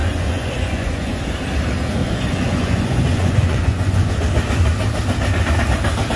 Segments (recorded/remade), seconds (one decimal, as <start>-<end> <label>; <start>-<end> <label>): 0.0-1.2 remade; 1.2-2.0 recorded; 2.0-4.1 remade; 4.1-6.2 recorded